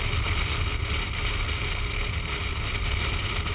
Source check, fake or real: real